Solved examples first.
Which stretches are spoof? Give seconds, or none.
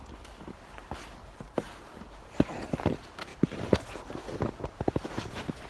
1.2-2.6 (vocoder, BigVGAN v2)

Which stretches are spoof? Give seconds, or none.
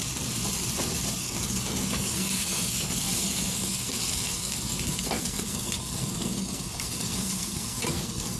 1.2-8.4 (codec, SNAC)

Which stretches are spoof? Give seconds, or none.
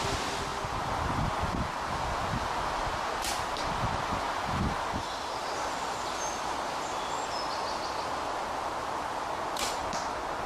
none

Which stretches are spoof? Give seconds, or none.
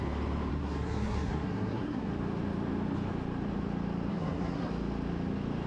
0.5-2.1 (codec, SNAC); 4.1-4.7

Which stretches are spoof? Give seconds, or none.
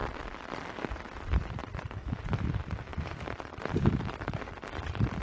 0.7-5.2 (vocoder, BigVGAN v2)